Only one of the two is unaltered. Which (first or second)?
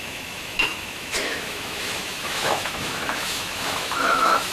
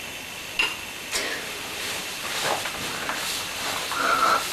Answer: second